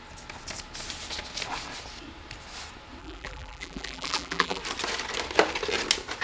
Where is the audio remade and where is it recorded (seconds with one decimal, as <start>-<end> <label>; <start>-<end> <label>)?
0.0-3.0 recorded; 3.0-4.6 remade; 4.6-6.2 recorded